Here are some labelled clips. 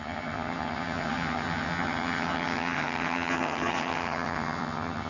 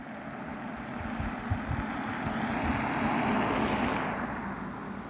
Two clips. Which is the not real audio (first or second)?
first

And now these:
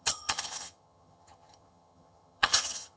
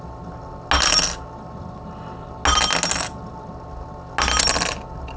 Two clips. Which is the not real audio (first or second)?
first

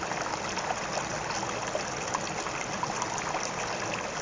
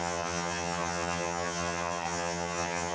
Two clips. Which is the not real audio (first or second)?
second